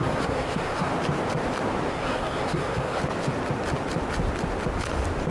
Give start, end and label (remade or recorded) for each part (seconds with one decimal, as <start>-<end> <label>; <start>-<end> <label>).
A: 0.0-0.9 remade; 0.9-1.9 recorded; 1.9-3.0 remade; 3.0-5.3 recorded